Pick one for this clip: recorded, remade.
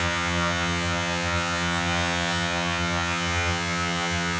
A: remade